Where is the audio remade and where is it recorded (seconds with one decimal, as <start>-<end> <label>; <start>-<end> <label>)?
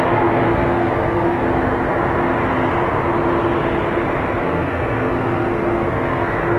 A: 0.0-1.4 remade; 1.4-4.4 recorded; 4.4-6.6 remade